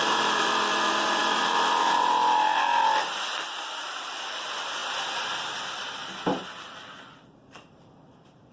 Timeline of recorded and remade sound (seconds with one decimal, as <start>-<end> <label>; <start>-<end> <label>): 0.0-4.8 remade; 4.8-6.6 recorded; 6.6-8.5 remade